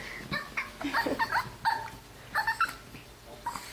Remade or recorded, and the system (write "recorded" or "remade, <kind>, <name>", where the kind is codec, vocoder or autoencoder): recorded